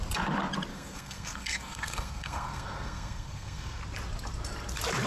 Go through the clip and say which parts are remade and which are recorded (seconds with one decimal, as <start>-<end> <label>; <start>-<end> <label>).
0.0-0.7 recorded; 0.7-3.8 remade; 3.8-5.1 recorded